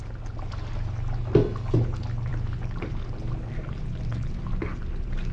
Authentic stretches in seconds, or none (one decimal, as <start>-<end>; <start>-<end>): 0.0-5.3